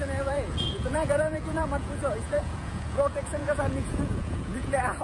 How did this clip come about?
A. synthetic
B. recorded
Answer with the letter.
A